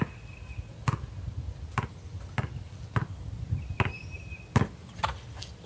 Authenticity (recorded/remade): recorded